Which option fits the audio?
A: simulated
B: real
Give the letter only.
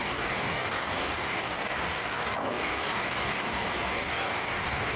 A